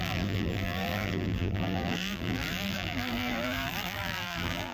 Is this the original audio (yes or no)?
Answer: no